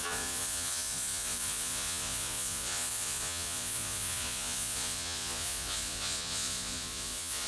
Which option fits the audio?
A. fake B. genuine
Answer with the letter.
A